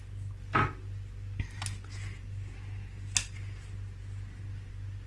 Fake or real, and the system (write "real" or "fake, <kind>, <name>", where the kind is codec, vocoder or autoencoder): real